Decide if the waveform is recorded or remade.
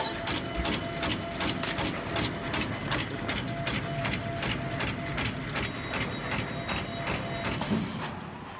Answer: recorded